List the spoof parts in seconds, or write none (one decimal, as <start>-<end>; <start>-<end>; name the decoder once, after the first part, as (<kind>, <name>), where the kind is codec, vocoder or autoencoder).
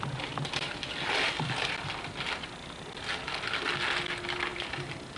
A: 4.5-5.2 (vocoder, BigVGAN v2)